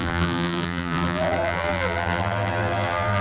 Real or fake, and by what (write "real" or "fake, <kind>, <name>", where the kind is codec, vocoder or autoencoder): fake, vocoder, BigVGAN v2